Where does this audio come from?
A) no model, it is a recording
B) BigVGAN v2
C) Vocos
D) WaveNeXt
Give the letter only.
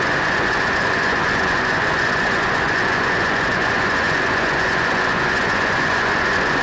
C